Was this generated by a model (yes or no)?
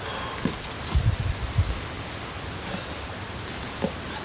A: no